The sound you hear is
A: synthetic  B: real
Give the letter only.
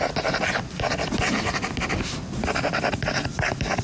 B